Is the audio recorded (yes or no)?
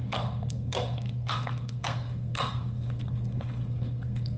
no